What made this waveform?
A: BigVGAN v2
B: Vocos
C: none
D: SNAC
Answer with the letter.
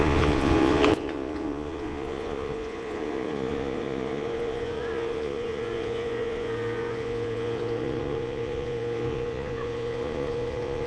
B